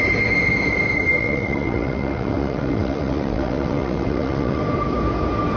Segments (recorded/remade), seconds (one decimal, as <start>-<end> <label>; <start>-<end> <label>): 0.0-1.2 recorded; 1.2-4.6 remade; 4.6-5.6 recorded